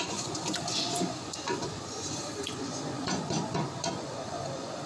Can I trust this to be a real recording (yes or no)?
no